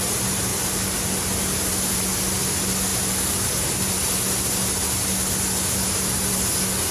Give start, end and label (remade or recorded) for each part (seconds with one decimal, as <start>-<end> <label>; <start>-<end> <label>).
0.0-6.9 recorded